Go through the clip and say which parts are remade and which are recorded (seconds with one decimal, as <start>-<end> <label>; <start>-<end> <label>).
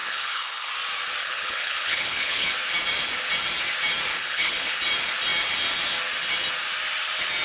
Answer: 0.0-0.7 remade; 0.7-1.2 recorded; 1.2-2.5 remade; 2.5-4.1 recorded; 4.1-4.8 remade; 4.8-7.4 recorded